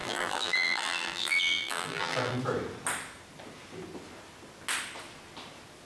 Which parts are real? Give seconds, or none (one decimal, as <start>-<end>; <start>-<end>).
2.4-5.9